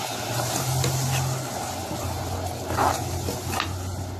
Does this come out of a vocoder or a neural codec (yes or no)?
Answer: no